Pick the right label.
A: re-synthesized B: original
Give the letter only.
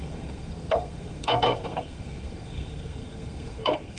A